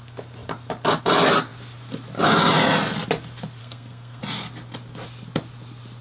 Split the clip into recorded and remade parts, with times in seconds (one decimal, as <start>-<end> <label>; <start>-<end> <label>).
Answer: 0.0-3.6 recorded; 3.6-4.2 remade; 4.2-6.0 recorded